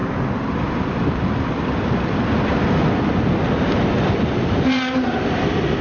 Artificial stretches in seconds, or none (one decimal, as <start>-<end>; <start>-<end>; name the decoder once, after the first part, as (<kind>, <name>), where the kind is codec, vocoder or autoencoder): 0.0-1.2 (vocoder, BigVGAN v2)